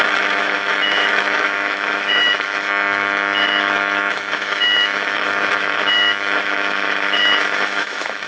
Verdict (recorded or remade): remade